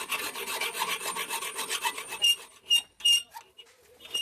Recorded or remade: recorded